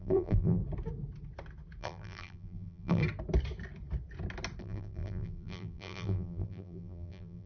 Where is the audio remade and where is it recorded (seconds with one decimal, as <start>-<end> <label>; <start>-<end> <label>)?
0.0-0.6 remade; 0.6-1.8 recorded; 1.8-3.0 remade; 3.0-4.6 recorded; 4.6-7.5 remade